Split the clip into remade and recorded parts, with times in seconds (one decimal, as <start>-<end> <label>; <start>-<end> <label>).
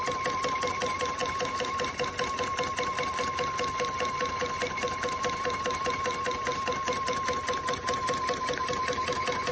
0.0-9.5 recorded